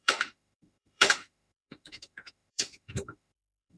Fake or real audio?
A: fake